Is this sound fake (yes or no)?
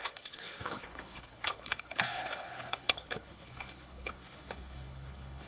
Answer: yes